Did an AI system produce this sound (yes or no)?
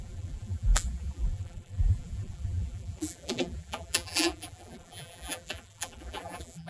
yes